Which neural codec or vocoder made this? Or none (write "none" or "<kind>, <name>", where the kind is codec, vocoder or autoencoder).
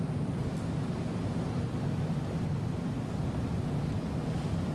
none